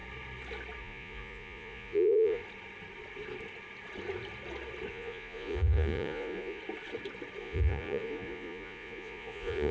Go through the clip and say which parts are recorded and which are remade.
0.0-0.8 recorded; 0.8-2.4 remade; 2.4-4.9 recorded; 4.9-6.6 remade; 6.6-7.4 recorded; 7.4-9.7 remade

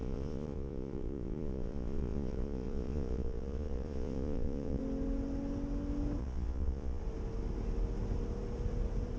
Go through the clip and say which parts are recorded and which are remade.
0.0-4.8 remade; 4.8-6.2 recorded; 6.2-7.0 remade; 7.0-9.2 recorded

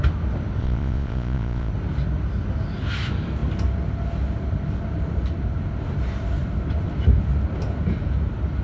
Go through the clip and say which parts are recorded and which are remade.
0.0-0.6 recorded; 0.6-1.7 remade; 1.7-8.6 recorded

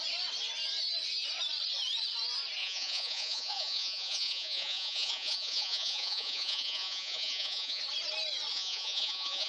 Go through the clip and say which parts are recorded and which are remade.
0.0-2.6 recorded; 2.6-7.8 remade; 7.8-8.5 recorded; 8.5-9.5 remade

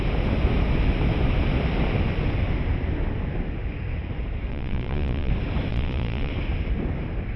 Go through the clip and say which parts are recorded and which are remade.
0.0-4.5 recorded; 4.5-5.3 remade; 5.3-5.7 recorded; 5.7-6.3 remade; 6.3-7.4 recorded

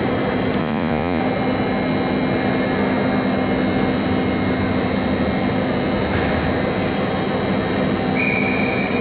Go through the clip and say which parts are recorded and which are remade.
0.0-0.6 recorded; 0.6-1.2 remade; 1.2-9.0 recorded